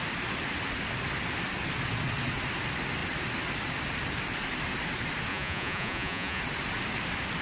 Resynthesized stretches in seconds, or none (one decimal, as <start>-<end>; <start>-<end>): 5.3-6.4